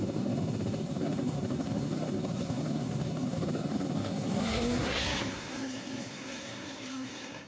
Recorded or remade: remade